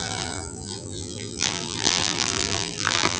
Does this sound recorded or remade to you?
remade